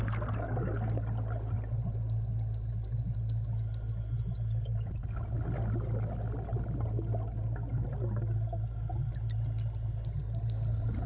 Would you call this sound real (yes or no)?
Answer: yes